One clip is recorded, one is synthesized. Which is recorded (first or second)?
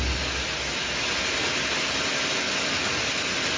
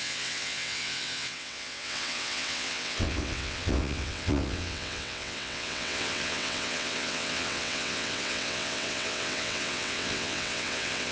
first